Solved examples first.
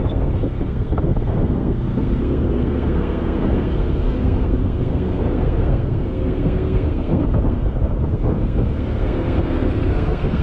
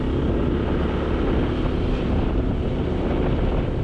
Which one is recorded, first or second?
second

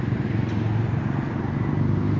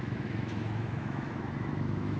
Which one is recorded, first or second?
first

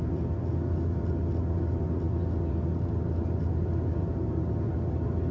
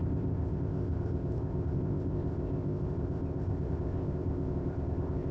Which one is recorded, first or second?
first